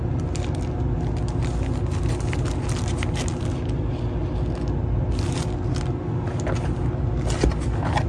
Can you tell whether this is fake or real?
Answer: real